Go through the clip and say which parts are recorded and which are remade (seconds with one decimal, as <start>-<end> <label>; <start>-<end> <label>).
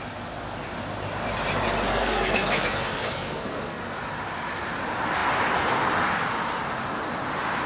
0.0-1.9 recorded; 1.9-3.8 remade; 3.8-7.7 recorded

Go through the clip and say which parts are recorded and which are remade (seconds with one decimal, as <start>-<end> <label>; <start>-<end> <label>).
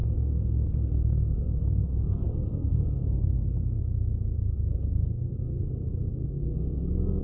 0.0-3.8 remade; 3.8-4.8 recorded; 4.8-5.6 remade; 5.6-6.2 recorded; 6.2-7.2 remade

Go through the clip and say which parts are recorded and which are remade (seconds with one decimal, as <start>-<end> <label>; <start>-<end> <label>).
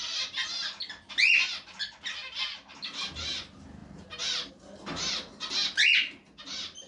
0.0-6.9 recorded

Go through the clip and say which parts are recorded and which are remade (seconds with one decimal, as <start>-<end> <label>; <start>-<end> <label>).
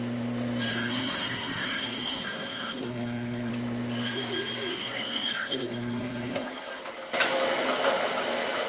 0.0-0.7 recorded; 0.7-3.5 remade; 3.5-4.7 recorded; 4.7-6.8 remade; 6.8-8.7 recorded